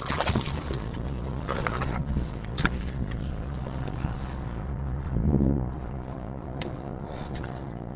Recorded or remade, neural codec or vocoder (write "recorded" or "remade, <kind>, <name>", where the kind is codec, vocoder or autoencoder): remade, vocoder, Vocos